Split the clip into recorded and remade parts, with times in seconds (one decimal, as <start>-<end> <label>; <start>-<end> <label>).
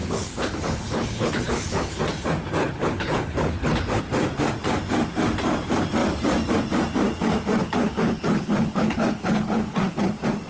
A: 0.0-2.0 remade; 2.0-2.6 recorded; 2.6-4.0 remade; 4.0-7.6 recorded; 7.6-10.1 remade; 10.1-10.5 recorded